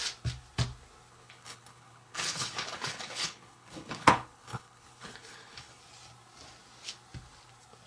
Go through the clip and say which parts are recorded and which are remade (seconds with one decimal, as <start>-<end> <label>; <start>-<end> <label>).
0.0-1.1 recorded; 1.1-5.8 remade; 5.8-7.9 recorded